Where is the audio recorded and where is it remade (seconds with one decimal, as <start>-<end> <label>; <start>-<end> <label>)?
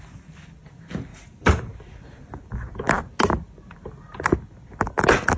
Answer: 0.0-1.1 recorded; 1.1-2.4 remade; 2.4-5.4 recorded